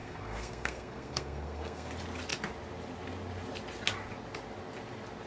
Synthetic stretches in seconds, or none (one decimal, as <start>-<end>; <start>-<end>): 0.0-1.9